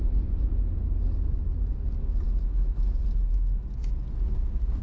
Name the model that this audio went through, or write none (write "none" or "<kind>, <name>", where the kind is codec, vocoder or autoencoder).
none